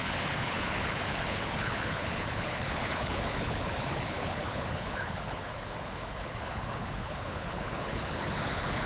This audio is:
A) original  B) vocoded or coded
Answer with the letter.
B